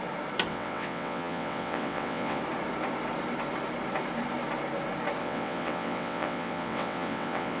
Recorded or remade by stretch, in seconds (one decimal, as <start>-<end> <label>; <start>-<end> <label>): 0.0-0.5 recorded; 0.5-2.4 remade; 2.4-5.2 recorded; 5.2-7.6 remade